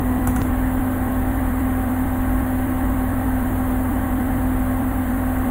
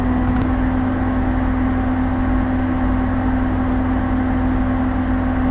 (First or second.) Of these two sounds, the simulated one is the first